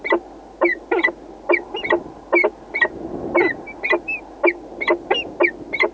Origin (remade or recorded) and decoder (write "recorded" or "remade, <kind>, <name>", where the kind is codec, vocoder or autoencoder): recorded